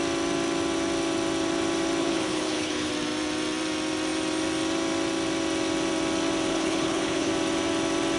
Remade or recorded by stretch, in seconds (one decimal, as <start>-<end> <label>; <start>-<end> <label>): 0.0-2.0 recorded; 2.0-2.9 remade; 2.9-6.5 recorded; 6.5-7.3 remade; 7.3-8.2 recorded